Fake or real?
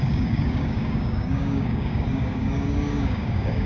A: fake